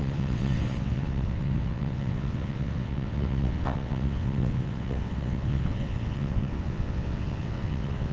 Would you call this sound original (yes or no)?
no